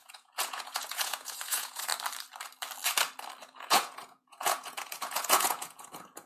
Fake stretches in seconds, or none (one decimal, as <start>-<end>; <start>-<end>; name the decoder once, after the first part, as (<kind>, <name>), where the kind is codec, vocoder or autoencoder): 0.0-1.9 (vocoder, Vocos); 3.4-6.3